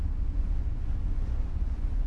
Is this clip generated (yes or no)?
yes